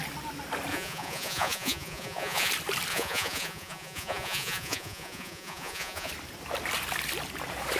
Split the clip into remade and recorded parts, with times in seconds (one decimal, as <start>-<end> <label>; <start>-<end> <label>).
0.0-0.7 recorded; 0.7-2.5 remade; 2.5-2.9 recorded; 2.9-6.1 remade; 6.1-7.8 recorded

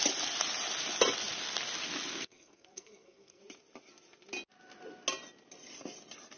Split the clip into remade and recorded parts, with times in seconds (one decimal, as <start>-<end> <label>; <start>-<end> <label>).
0.0-2.1 recorded; 2.1-3.4 remade; 3.4-6.4 recorded

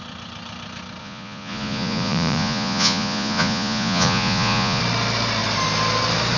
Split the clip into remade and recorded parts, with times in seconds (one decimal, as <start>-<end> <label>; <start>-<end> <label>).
0.0-1.0 recorded; 1.0-4.8 remade; 4.8-6.4 recorded

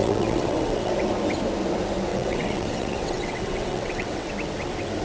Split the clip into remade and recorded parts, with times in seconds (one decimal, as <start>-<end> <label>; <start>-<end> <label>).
0.0-0.9 remade; 0.9-2.1 recorded; 2.1-4.3 remade; 4.3-5.0 recorded

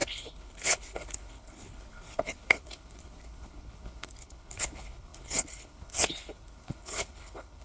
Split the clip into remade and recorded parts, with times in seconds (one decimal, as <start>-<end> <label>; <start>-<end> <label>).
0.0-7.6 remade

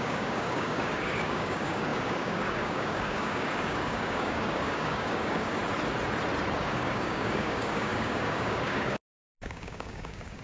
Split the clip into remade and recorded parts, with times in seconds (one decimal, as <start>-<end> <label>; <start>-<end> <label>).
0.0-5.6 remade; 5.6-6.6 recorded; 6.6-10.4 remade

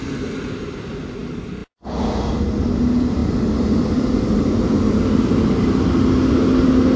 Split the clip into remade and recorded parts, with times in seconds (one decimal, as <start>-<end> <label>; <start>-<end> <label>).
0.0-7.0 recorded

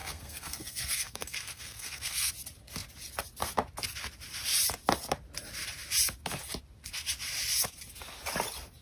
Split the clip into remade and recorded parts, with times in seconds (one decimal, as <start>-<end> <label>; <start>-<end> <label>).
0.0-2.3 remade; 2.3-8.8 recorded